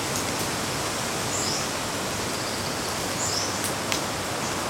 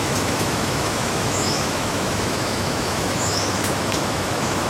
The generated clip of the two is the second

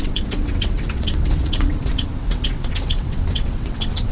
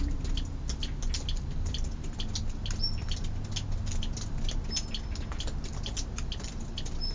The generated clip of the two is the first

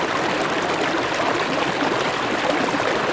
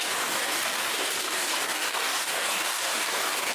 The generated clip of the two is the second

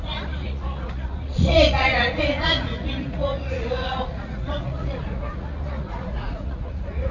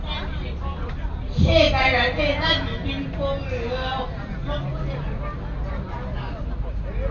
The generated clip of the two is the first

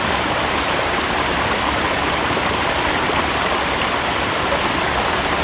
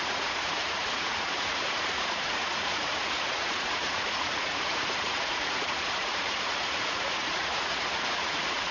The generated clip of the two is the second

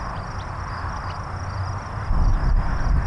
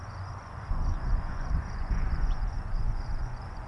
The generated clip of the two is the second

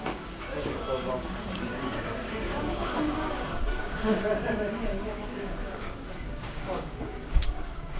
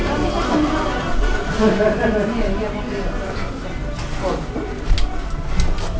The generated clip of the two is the first